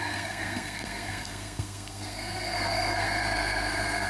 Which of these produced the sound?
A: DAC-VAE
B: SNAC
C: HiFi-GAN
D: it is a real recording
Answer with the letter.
B